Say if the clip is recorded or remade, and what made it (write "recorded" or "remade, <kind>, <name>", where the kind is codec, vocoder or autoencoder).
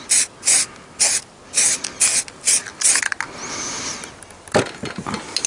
recorded